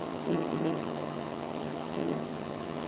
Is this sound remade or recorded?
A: remade